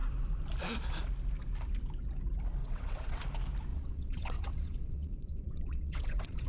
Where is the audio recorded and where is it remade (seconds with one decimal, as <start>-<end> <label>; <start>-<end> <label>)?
0.0-2.6 recorded; 2.6-3.2 remade; 3.2-3.7 recorded; 3.7-6.5 remade